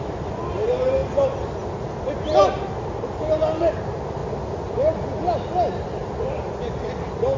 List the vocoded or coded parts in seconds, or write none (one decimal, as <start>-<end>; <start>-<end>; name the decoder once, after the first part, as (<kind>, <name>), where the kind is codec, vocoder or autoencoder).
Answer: none